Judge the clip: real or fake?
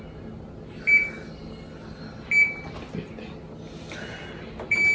real